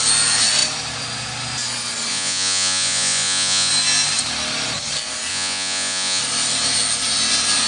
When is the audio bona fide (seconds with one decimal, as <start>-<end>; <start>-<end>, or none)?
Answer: 0.0-2.1; 3.7-5.3; 6.2-7.7